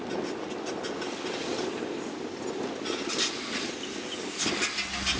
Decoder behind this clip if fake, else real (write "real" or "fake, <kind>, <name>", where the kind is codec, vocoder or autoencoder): real